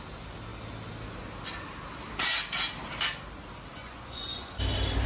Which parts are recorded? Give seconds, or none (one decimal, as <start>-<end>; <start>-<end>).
0.0-3.8; 4.5-5.1